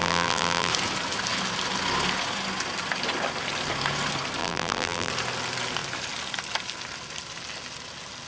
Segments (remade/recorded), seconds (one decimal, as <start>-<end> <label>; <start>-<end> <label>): 0.0-0.7 remade; 0.7-4.4 recorded; 4.4-5.1 remade; 5.1-8.3 recorded